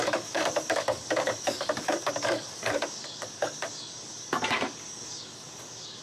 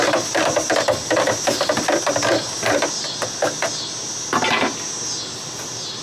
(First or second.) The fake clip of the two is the first